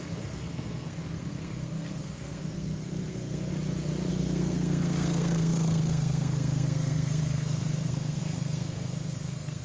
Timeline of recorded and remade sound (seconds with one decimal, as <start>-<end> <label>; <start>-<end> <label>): 0.0-3.5 remade; 3.5-4.1 recorded; 4.1-9.6 remade

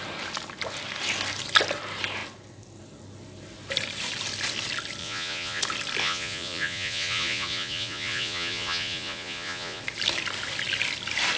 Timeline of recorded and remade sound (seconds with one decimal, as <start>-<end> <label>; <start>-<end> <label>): 0.0-5.0 recorded; 5.0-5.6 remade; 5.6-6.0 recorded; 6.0-9.8 remade; 9.8-11.4 recorded